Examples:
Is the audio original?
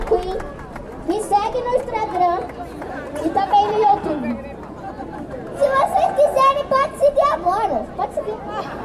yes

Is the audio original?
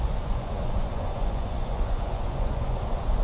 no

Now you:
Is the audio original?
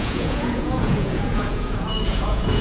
no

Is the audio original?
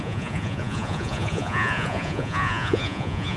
no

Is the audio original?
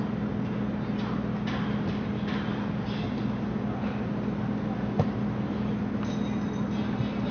yes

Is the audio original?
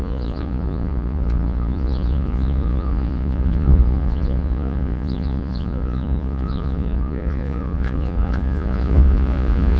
no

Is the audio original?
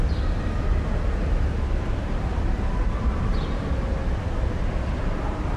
yes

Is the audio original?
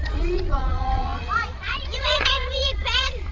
no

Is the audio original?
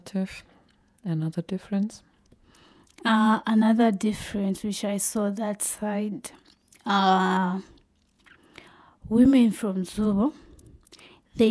no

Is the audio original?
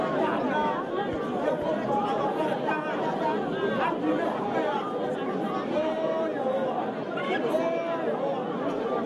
yes